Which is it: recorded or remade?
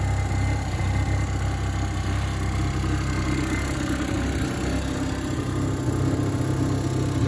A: recorded